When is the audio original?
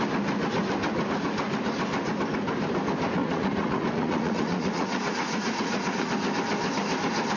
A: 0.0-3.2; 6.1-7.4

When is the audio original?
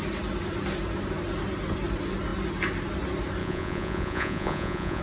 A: 0.0-3.4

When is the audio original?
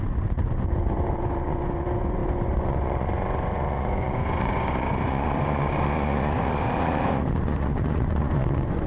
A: none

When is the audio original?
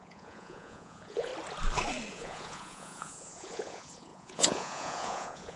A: 1.3-2.1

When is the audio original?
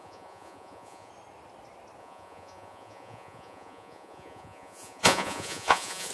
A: 1.1-2.0